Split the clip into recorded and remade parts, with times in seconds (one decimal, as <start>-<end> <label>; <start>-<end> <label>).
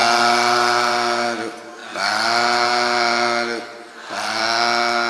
0.0-5.1 recorded